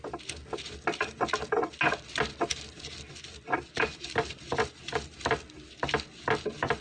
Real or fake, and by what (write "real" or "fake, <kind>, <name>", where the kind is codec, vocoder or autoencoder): real